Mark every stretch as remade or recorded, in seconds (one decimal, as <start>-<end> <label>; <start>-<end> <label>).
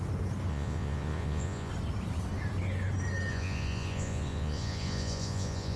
0.0-0.5 recorded; 0.5-1.7 remade; 1.7-3.3 recorded; 3.3-5.8 remade